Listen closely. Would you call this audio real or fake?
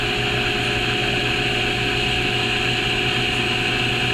real